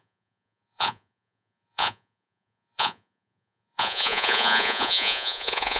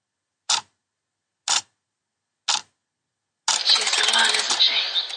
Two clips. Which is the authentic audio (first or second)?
second